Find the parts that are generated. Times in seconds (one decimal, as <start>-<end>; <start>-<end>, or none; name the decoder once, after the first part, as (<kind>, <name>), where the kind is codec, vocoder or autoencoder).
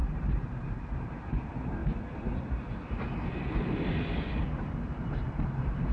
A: 0.0-1.8 (vocoder, BigVGAN v2); 5.3-5.9